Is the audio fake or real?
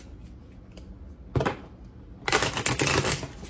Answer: real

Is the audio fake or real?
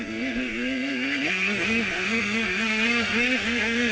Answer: fake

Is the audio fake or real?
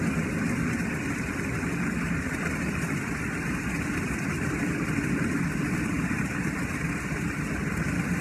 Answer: real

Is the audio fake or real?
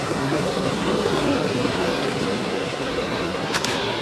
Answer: fake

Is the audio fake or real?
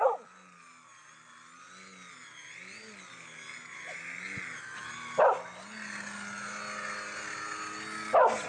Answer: real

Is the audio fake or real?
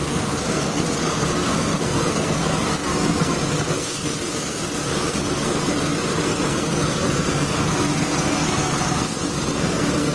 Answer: fake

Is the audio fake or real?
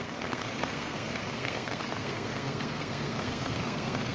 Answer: fake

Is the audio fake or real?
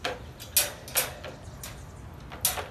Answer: real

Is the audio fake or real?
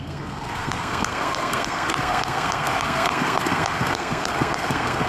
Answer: fake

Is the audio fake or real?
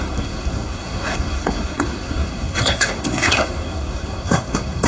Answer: fake